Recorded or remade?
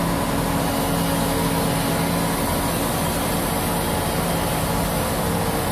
recorded